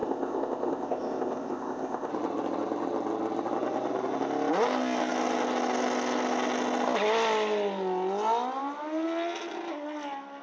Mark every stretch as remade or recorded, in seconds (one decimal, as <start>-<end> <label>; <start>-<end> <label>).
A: 0.0-2.1 remade; 2.1-10.4 recorded